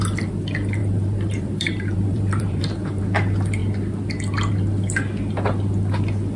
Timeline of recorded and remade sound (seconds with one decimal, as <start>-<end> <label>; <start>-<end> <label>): 0.0-0.8 recorded; 0.8-3.0 remade; 3.0-6.4 recorded